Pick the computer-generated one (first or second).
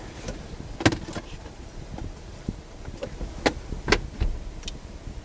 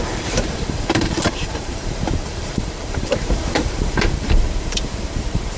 second